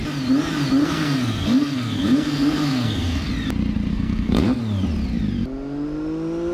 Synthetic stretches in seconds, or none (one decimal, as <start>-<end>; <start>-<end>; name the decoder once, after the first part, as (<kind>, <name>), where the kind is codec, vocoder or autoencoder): 0.8-3.3 (codec, SNAC); 3.9-4.6